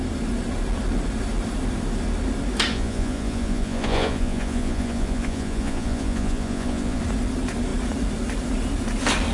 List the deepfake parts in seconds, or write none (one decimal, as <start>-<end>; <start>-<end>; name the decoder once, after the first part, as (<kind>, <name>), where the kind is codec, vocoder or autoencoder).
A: 2.7-7.0 (vocoder, Vocos)